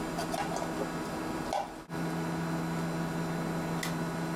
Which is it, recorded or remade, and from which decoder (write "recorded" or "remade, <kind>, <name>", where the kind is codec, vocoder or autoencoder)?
recorded